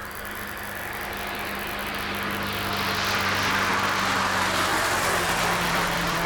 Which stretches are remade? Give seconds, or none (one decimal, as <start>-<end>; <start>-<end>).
4.7-6.3